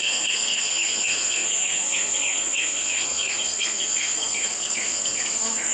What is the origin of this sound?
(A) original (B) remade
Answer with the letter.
B